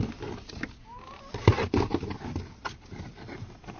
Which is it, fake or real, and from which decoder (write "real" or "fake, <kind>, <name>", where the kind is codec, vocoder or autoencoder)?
real